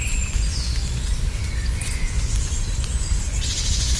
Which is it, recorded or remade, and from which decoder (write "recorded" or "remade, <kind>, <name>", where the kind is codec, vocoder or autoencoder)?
remade, vocoder, Vocos